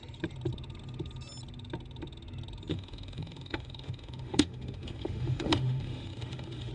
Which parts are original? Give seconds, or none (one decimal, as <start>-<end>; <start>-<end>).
0.0-2.7